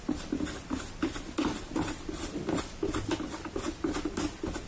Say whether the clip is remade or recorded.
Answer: recorded